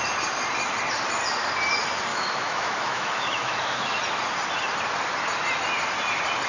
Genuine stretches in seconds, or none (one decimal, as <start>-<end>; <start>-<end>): 0.0-2.1; 4.0-6.5